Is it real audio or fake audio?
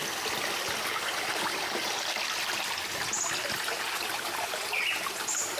real